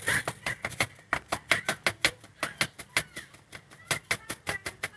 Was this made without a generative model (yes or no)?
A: yes